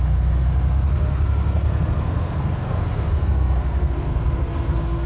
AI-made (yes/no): yes